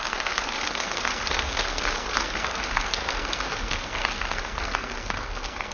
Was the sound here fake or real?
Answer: fake